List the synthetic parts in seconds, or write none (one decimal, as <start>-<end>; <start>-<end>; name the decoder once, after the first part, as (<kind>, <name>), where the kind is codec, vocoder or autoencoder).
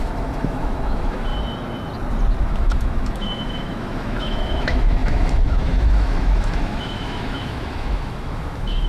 0.0-1.3 (autoencoder, DAC-VAE); 2.4-8.9